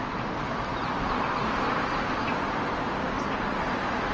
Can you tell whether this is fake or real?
real